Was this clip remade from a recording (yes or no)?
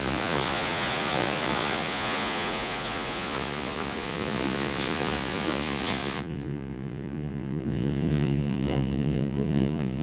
yes